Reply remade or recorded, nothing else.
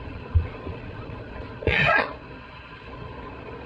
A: remade